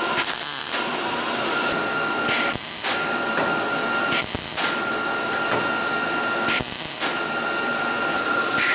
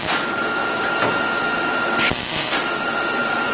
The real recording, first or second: first